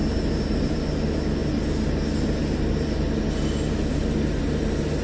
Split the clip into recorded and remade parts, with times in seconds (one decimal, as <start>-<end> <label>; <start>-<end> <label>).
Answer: 0.0-0.8 remade; 0.8-5.0 recorded

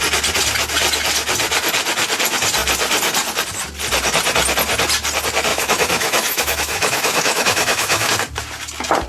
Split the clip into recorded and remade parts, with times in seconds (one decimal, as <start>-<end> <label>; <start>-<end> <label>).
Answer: 0.0-5.5 recorded; 5.5-8.1 remade; 8.1-9.1 recorded